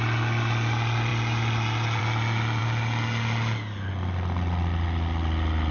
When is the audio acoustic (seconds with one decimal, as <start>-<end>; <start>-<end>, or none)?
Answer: 0.0-5.7